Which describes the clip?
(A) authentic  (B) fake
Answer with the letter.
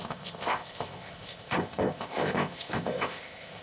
B